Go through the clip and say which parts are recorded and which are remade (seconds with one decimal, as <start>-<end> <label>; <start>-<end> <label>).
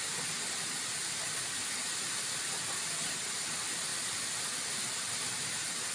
0.0-5.9 recorded